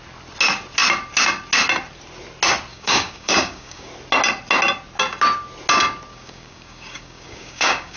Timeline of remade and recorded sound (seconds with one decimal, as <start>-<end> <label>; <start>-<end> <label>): 0.0-2.7 recorded; 2.7-3.9 remade; 3.9-6.1 recorded; 6.1-8.0 remade